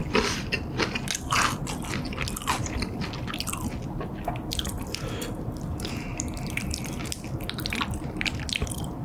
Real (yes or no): yes